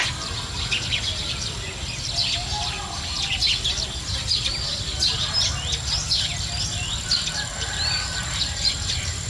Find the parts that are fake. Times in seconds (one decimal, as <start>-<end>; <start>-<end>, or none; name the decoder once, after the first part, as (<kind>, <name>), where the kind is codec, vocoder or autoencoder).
7.5-9.3 (vocoder, BigVGAN v2)